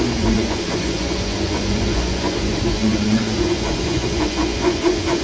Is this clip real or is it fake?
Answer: fake